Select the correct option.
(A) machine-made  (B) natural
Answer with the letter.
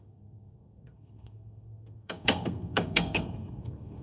A